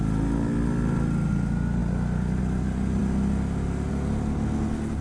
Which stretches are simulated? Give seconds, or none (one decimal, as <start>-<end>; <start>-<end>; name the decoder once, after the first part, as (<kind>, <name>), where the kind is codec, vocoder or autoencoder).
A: none